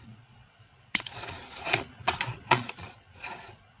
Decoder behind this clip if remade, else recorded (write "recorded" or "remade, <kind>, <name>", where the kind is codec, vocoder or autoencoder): remade, vocoder, Vocos